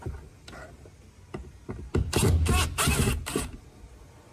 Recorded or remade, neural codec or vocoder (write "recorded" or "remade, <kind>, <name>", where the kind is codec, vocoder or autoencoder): recorded